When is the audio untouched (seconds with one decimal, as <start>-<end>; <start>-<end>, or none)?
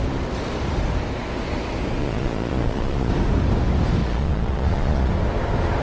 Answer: 0.0-2.0; 3.1-4.0; 5.1-5.8